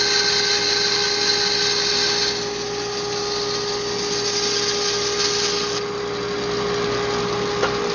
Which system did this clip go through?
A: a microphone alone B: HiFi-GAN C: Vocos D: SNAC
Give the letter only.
A